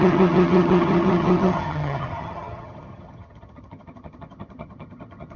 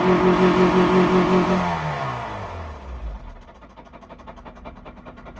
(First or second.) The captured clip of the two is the second